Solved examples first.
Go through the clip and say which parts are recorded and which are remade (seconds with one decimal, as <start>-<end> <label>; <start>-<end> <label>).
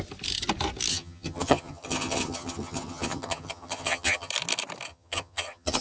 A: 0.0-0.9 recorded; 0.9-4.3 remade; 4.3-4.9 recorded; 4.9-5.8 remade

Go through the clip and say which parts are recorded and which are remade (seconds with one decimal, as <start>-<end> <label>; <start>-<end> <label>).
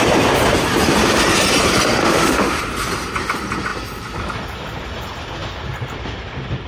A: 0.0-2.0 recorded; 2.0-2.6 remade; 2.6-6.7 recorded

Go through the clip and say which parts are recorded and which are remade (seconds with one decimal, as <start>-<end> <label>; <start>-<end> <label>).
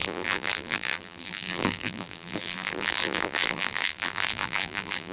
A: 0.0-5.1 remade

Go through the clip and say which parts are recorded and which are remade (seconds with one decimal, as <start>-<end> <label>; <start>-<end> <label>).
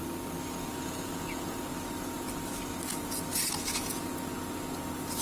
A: 0.0-0.7 recorded; 0.7-1.6 remade; 1.6-3.3 recorded; 3.3-4.0 remade; 4.0-5.2 recorded